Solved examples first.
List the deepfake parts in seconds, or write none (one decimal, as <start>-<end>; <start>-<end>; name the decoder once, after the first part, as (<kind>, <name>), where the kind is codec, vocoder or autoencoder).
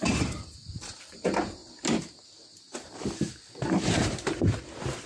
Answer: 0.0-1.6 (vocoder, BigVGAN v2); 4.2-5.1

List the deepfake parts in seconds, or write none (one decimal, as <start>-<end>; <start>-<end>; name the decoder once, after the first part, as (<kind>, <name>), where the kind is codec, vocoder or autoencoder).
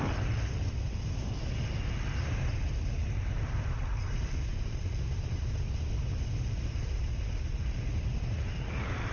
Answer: 3.0-3.9 (vocoder, BigVGAN v2)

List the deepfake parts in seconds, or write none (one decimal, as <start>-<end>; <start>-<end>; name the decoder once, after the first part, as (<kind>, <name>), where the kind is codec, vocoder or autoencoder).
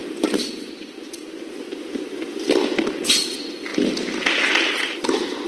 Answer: none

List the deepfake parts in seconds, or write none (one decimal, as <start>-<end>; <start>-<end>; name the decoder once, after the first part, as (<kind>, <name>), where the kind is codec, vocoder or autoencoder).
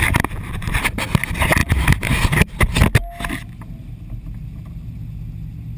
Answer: none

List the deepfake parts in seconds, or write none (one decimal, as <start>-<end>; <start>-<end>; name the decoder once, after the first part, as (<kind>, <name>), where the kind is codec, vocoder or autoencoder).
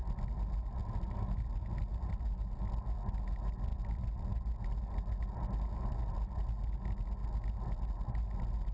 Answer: none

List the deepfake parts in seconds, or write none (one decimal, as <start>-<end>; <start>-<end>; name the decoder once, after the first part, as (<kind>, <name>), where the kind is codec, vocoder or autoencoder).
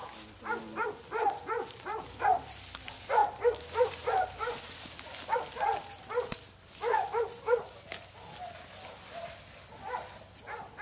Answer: none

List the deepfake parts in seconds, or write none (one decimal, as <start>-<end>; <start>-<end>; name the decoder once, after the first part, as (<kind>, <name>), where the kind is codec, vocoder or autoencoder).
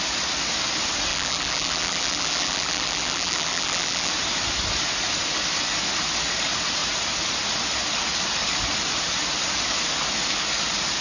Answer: 1.1-4.1 (vocoder, BigVGAN v2)